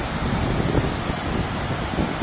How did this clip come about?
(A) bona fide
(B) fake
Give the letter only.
A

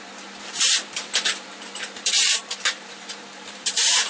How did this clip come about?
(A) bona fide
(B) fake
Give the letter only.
B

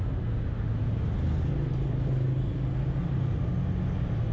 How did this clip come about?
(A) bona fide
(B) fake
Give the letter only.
A